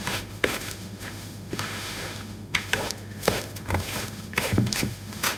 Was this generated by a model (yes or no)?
yes